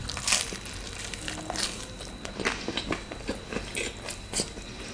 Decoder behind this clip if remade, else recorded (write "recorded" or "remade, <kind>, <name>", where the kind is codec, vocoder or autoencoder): recorded